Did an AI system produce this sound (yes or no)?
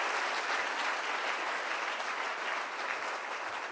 no